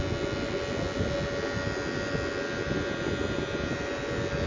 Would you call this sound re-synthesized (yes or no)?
no